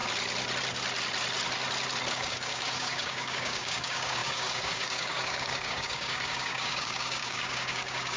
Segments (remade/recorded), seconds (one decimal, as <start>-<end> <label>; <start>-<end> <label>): 0.0-2.1 recorded; 2.1-8.2 remade